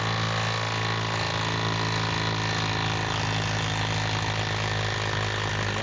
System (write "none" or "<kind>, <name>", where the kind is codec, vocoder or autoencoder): none